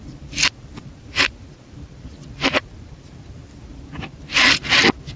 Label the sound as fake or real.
fake